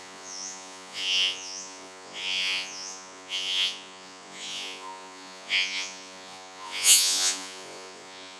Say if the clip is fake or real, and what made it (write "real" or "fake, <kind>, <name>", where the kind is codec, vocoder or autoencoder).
fake, vocoder, Vocos